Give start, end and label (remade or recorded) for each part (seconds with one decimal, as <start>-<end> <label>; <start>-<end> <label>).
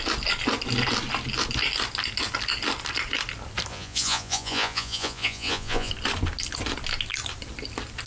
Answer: 0.0-3.7 recorded; 3.7-5.9 remade; 5.9-8.1 recorded